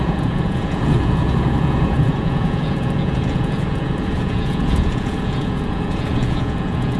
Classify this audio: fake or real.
fake